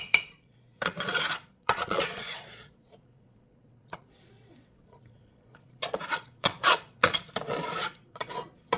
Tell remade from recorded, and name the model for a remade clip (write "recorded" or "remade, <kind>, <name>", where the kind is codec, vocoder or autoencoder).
remade, vocoder, Vocos